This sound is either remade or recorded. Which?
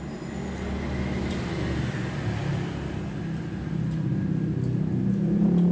recorded